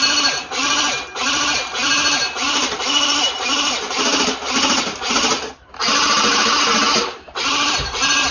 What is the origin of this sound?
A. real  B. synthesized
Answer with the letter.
B